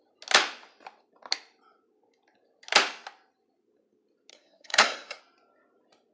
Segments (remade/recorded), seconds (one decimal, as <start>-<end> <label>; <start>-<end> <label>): 0.0-4.3 recorded; 4.3-5.2 remade; 5.2-6.1 recorded